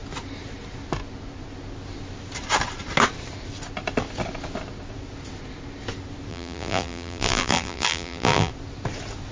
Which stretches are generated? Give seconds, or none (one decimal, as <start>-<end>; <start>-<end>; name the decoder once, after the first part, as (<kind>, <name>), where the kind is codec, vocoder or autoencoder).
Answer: 6.3-8.5 (vocoder, BigVGAN v2)